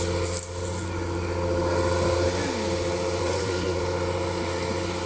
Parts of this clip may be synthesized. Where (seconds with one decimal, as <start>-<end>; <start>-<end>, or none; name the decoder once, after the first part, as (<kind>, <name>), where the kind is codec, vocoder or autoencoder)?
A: 3.2-3.8 (codec, SNAC)